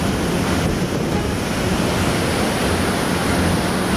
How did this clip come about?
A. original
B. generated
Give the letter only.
A